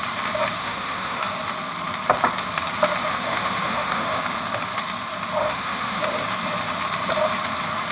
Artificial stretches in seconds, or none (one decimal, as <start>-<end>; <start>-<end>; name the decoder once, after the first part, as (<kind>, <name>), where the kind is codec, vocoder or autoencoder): 0.6-1.2 (autoencoder, DAC-VAE); 3.0-4.2; 5.4-6.0